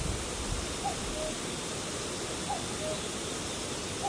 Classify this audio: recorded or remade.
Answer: recorded